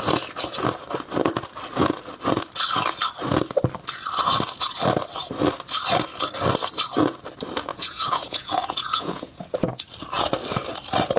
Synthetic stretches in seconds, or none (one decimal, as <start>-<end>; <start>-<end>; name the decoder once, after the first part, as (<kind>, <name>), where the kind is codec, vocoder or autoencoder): 7.7-9.8 (vocoder, Vocos)

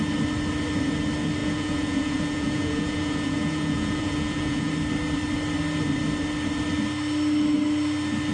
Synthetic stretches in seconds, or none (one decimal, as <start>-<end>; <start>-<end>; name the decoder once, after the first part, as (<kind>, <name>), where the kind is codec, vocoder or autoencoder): 1.4-4.7 (vocoder, Vocos)